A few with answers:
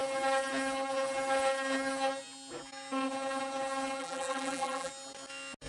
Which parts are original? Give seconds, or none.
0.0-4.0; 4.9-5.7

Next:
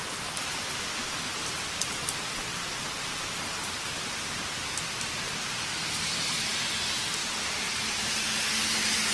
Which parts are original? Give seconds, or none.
0.0-3.6; 4.3-7.2; 8.0-9.1

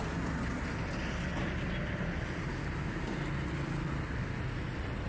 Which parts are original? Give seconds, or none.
0.0-5.1

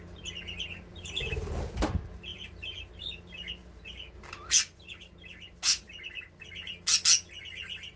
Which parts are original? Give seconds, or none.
0.0-0.9; 1.9-2.3; 2.9-8.0